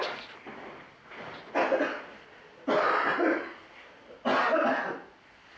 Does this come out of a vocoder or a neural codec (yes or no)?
no